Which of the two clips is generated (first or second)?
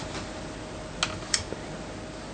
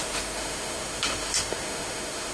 second